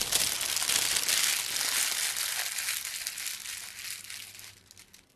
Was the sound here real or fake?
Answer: real